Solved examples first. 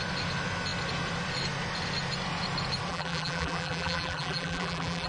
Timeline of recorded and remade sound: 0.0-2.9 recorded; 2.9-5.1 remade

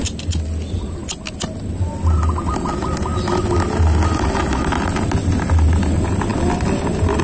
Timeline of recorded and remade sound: 0.0-7.2 recorded

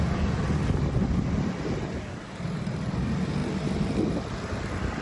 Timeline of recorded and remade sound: 0.0-3.4 recorded; 3.4-4.6 remade; 4.6-5.0 recorded

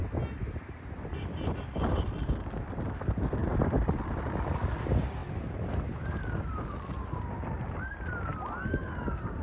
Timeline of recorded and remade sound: 0.0-0.6 recorded; 0.6-5.2 remade; 5.2-6.2 recorded; 6.2-8.3 remade; 8.3-8.8 recorded; 8.8-9.4 remade

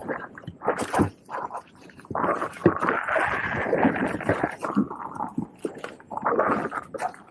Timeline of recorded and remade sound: 0.0-2.6 remade; 2.6-3.3 recorded; 3.3-4.6 remade; 4.6-7.3 recorded

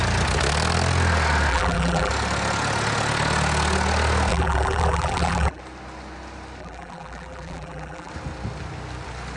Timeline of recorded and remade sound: 0.0-1.5 recorded; 1.5-2.1 remade; 2.1-4.3 recorded; 4.3-5.6 remade; 5.6-6.6 recorded; 6.6-8.1 remade; 8.1-9.4 recorded

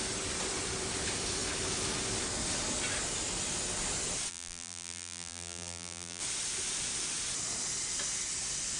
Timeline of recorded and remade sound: 0.0-4.3 recorded; 4.3-6.2 remade; 6.2-8.8 recorded

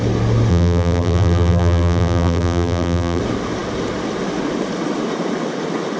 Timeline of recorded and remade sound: 0.0-0.5 recorded; 0.5-3.2 remade; 3.2-6.0 recorded